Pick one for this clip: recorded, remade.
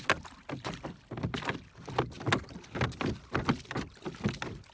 recorded